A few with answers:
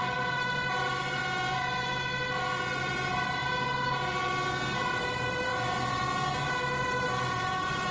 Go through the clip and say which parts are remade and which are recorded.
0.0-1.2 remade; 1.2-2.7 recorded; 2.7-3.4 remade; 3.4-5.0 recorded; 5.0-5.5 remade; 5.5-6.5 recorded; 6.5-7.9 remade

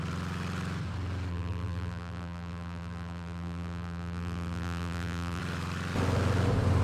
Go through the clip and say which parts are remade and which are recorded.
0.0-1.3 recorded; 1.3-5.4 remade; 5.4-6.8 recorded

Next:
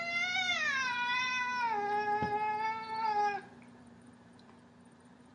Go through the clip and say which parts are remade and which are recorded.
0.0-1.3 remade; 1.3-3.8 recorded; 3.8-5.3 remade

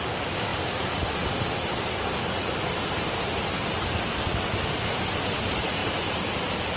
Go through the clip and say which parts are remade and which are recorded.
0.0-5.8 recorded; 5.8-6.8 remade